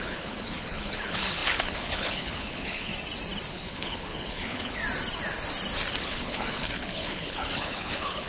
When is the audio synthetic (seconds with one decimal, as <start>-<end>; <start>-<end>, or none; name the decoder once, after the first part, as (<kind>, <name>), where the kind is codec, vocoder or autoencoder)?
0.0-2.9 (codec, HILCodec); 3.5-4.8; 6.0-8.3